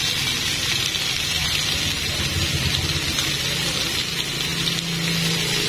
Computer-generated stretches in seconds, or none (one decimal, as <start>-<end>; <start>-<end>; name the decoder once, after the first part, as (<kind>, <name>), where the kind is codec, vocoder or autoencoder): none